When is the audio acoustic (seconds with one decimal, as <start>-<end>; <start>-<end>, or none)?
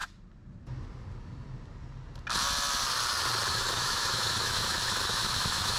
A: 0.0-3.5